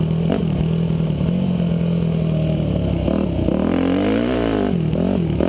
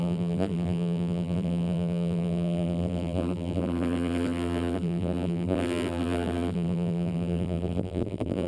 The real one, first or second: first